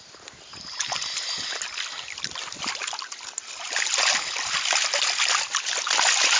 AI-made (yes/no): no